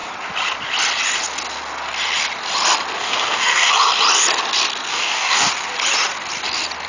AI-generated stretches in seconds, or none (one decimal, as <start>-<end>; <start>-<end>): 3.0-3.7; 4.9-5.5